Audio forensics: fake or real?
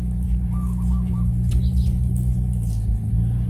real